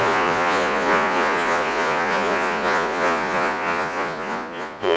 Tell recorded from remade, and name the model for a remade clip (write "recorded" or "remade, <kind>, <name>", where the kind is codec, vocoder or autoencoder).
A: remade, vocoder, Vocos